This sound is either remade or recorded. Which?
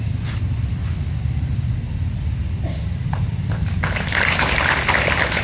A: recorded